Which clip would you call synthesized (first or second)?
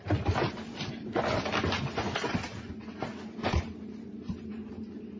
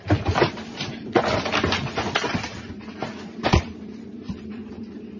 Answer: second